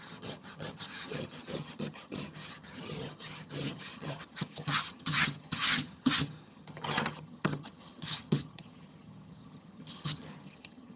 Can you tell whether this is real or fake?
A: fake